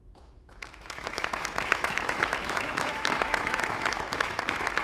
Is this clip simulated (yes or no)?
yes